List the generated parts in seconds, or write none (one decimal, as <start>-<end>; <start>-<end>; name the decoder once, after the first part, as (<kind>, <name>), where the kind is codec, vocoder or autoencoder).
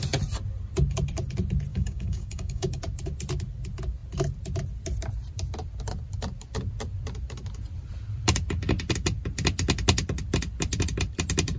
1.7-2.8 (codec, DAC)